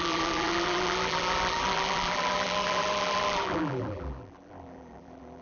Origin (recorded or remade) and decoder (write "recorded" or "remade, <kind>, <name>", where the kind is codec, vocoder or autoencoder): remade, vocoder, BigVGAN v2